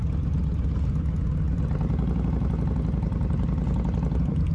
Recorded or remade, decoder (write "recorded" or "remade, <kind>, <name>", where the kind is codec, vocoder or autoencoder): recorded